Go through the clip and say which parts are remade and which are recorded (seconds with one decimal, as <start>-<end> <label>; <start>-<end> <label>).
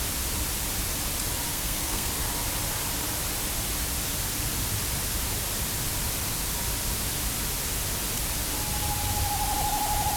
0.0-1.5 recorded; 1.5-2.1 remade; 2.1-10.2 recorded